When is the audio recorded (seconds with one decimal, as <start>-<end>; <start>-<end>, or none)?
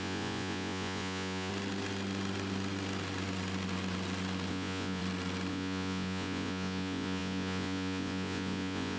1.5-4.5; 5.0-5.5